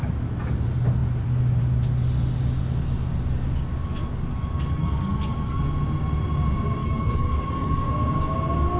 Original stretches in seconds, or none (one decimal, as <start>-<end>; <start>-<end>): 0.0-3.8; 5.6-6.8; 7.9-8.8